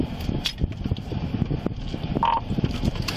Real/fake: real